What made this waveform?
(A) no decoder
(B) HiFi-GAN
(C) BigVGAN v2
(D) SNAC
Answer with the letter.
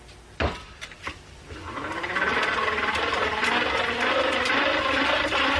C